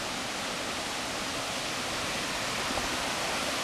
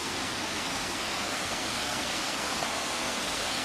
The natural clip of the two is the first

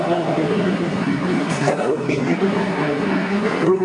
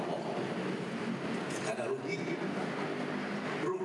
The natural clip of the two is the second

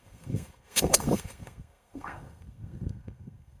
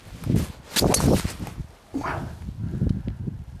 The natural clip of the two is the second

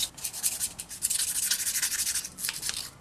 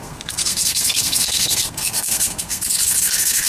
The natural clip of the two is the first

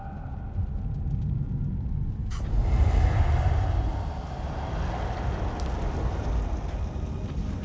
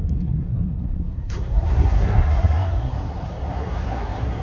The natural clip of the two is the first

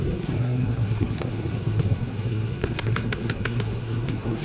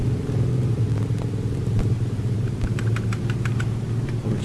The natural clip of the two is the second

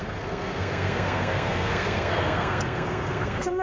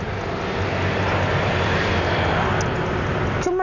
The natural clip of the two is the second